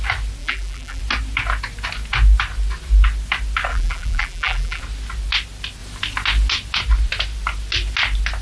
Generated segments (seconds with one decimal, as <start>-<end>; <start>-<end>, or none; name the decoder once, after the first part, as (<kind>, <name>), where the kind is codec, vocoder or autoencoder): 0.4-1.0 (vocoder, BigVGAN v2); 3.7-4.8